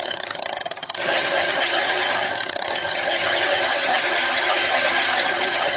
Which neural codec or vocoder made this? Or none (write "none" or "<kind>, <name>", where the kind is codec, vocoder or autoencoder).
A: vocoder, HiFi-GAN